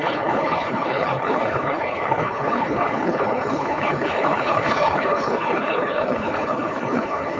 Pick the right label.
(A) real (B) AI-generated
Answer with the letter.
B